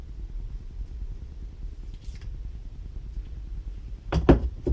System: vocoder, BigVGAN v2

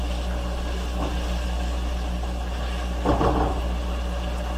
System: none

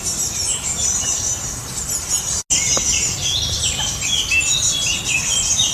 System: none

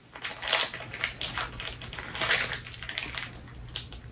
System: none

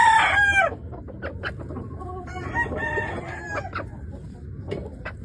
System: none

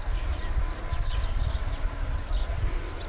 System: none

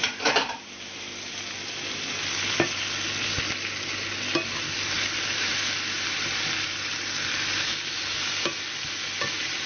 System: none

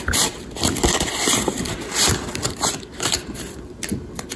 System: vocoder, BigVGAN v2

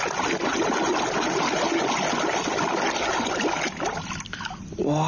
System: none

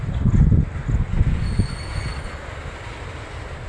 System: none